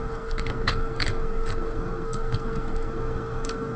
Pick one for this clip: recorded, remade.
remade